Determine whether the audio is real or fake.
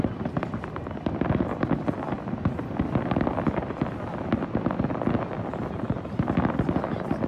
real